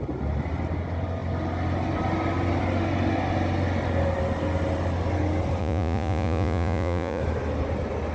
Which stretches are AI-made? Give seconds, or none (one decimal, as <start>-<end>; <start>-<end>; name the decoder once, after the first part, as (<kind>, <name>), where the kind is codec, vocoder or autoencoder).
5.6-7.2 (vocoder, Vocos)